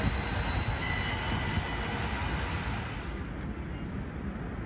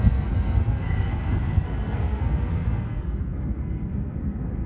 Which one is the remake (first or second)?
second